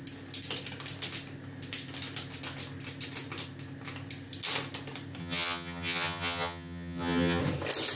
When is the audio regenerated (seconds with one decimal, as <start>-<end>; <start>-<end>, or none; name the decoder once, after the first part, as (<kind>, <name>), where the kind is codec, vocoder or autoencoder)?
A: 5.2-7.4 (vocoder, HiFi-GAN)